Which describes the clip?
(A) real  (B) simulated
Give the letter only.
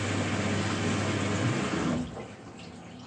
A